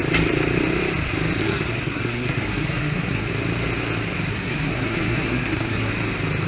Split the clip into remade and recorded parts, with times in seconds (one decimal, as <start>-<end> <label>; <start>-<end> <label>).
0.0-1.4 recorded; 1.4-3.3 remade; 3.3-4.3 recorded; 4.3-5.9 remade; 5.9-6.5 recorded